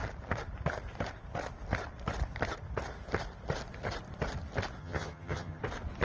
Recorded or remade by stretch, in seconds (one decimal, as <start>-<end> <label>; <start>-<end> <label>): 0.0-4.8 recorded; 4.8-5.6 remade; 5.6-6.0 recorded